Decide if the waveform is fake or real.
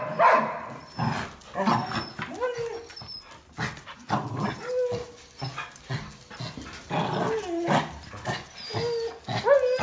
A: real